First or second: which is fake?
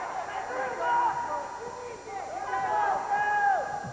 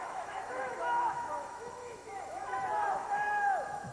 second